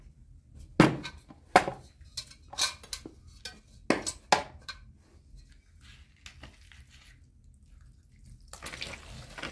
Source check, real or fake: real